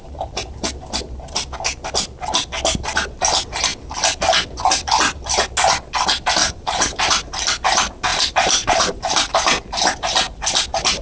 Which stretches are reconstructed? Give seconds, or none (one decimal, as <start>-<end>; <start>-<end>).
6.4-7.3; 8.1-9.0